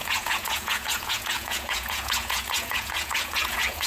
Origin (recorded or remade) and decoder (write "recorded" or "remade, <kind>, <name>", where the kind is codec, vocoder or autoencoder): remade, vocoder, Vocos